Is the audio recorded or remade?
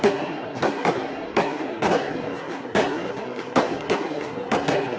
remade